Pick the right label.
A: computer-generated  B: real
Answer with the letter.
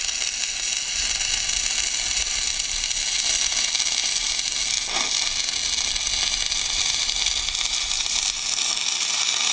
B